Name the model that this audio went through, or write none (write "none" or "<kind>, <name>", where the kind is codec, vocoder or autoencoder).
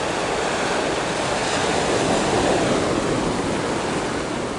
none